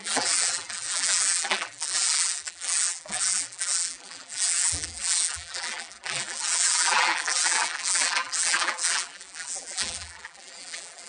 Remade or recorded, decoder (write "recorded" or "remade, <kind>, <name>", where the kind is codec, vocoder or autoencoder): remade, vocoder, BigVGAN v2